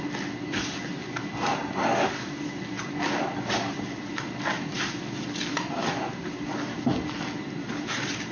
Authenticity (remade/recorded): recorded